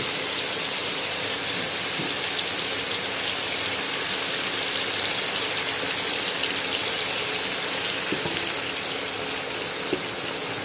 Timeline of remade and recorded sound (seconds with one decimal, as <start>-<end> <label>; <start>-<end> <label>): 0.0-0.8 recorded; 0.8-2.0 remade; 2.0-10.6 recorded